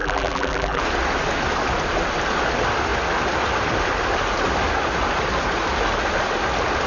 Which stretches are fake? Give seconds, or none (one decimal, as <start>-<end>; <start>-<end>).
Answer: 0.0-0.8